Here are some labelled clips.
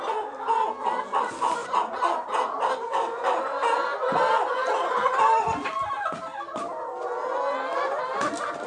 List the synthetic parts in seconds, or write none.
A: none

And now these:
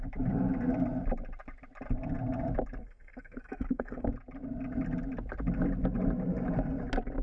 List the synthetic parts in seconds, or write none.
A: 2.8-4.1 (codec, SNAC)

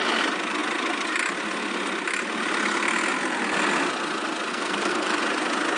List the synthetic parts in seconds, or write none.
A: 4.5-5.2 (codec, SNAC)

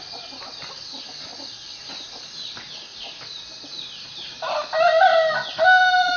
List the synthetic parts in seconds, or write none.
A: none

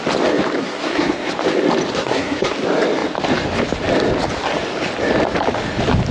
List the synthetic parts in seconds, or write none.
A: 0.6-1.3 (codec, SNAC); 1.9-2.5